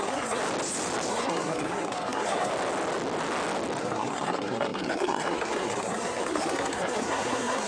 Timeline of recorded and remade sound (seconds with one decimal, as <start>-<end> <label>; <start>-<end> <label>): 0.0-0.4 remade; 0.4-1.1 recorded; 1.1-2.5 remade; 2.5-3.8 recorded; 3.8-7.7 remade